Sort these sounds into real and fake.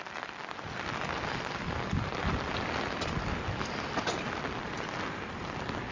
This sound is real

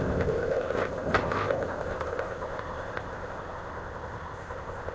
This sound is fake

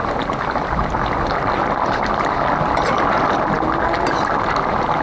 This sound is real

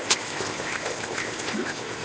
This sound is fake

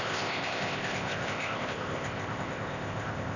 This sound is fake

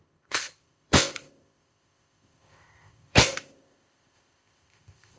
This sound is fake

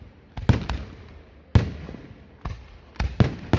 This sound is real